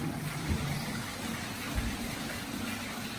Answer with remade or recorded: recorded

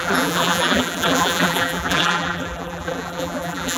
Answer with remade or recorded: remade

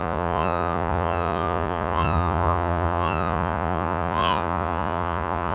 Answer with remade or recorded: remade